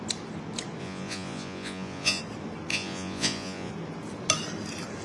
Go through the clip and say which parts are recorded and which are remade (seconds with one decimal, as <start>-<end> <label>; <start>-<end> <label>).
0.0-0.8 recorded; 0.8-2.2 remade; 2.2-2.7 recorded; 2.7-3.7 remade; 3.7-5.0 recorded